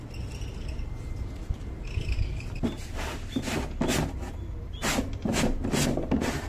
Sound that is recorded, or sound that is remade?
recorded